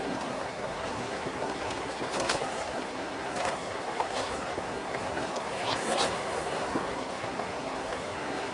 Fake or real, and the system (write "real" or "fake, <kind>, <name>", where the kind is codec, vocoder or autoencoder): fake, codec, SNAC